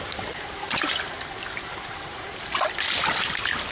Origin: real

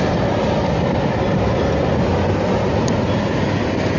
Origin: real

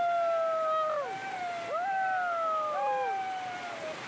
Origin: real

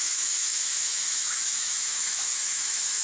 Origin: fake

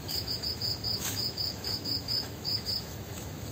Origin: fake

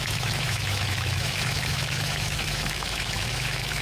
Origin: fake